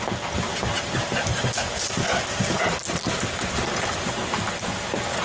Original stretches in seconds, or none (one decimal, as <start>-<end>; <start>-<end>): 0.0-5.2